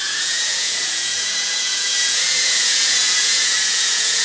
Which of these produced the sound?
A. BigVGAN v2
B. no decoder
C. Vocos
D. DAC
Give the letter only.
C